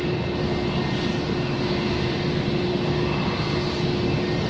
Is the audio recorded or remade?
recorded